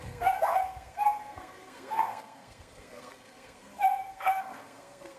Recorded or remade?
remade